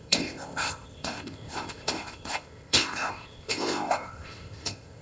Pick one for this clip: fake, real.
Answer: fake